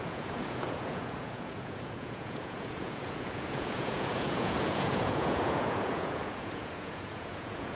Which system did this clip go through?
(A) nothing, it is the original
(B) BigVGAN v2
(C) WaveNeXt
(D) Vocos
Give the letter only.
D